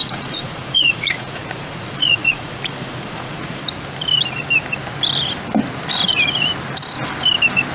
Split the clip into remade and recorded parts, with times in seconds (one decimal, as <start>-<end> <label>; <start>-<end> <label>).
0.0-3.6 remade; 3.6-7.7 recorded